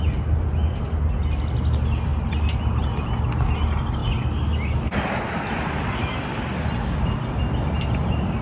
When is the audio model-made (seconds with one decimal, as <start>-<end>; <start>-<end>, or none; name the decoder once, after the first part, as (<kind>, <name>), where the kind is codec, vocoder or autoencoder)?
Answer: none